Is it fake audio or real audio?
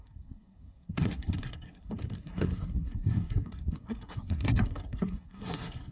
fake